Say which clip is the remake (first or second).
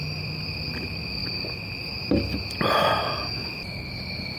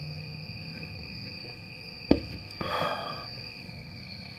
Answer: second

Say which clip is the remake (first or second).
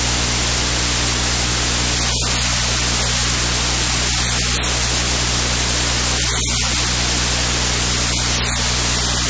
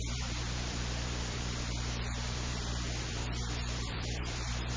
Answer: second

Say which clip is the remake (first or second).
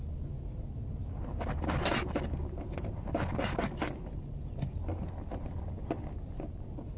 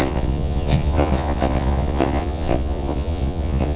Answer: second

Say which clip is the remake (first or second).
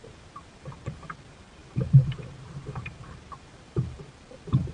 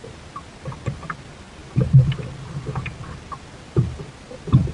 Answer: first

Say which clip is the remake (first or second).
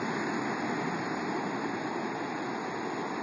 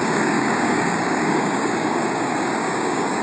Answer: second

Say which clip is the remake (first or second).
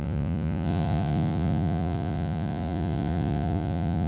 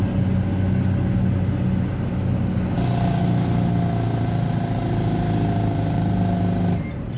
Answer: first